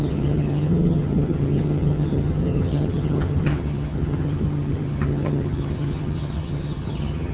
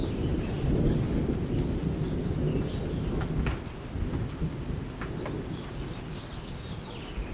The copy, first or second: first